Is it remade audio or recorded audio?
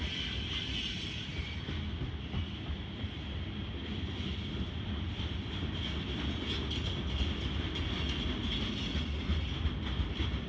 recorded